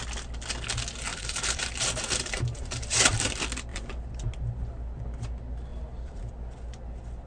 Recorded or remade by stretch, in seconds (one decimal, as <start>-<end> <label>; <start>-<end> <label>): 0.0-1.1 recorded; 1.1-3.3 remade; 3.3-3.7 recorded; 3.7-4.3 remade; 4.3-5.7 recorded; 5.7-6.3 remade; 6.3-7.3 recorded